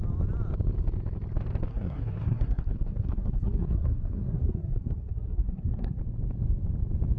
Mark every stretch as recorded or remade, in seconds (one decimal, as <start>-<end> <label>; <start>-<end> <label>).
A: 0.0-1.7 recorded; 1.7-6.0 remade; 6.0-7.2 recorded